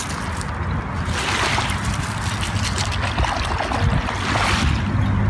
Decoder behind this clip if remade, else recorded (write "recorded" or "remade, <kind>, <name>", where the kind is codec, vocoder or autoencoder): recorded